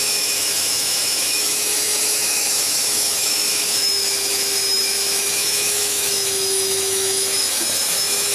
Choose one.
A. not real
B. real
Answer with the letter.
A